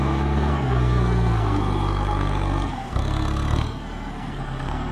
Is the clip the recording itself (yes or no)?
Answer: no